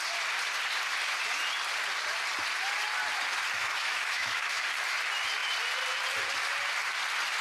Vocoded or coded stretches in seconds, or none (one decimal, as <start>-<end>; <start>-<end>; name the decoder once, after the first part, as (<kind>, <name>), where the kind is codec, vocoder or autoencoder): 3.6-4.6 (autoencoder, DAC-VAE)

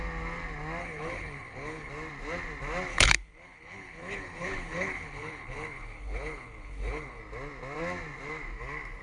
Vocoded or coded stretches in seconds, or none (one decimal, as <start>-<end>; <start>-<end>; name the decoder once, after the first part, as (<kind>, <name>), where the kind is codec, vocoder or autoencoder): 0.8-1.9 (codec, HILCodec); 2.9-7.2

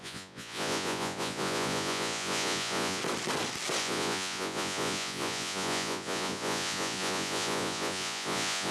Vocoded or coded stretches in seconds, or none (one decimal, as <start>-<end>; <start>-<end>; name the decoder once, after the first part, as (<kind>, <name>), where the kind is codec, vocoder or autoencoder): 0.0-3.0 (vocoder, Vocos); 3.8-8.7